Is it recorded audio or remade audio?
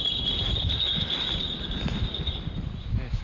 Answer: recorded